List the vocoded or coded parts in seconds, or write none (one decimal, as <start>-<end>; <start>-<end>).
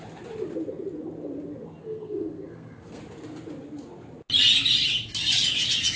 1.8-3.0